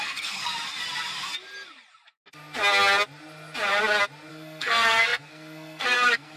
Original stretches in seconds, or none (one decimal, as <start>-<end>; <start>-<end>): 0.5-4.3